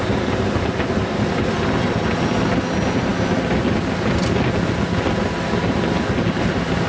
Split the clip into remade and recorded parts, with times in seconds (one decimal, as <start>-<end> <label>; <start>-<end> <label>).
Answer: 0.0-6.9 recorded